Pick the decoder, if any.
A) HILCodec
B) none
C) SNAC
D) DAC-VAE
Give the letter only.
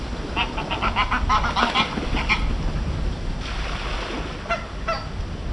B